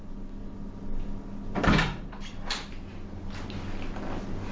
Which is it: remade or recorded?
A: recorded